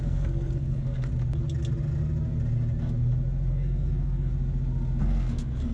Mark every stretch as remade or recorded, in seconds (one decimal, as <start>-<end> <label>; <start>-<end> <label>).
0.0-1.1 remade; 1.1-3.5 recorded; 3.5-4.3 remade; 4.3-5.0 recorded; 5.0-5.7 remade